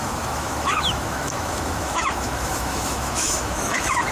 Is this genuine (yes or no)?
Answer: no